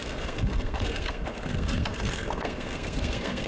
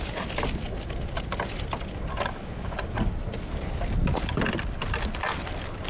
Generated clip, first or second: first